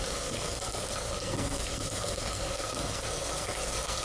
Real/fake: fake